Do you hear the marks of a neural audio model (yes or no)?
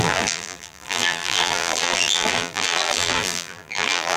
yes